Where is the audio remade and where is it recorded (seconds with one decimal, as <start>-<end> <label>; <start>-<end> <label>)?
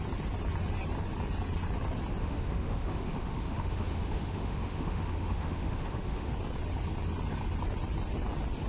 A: 0.0-2.2 recorded; 2.2-6.3 remade; 6.3-8.7 recorded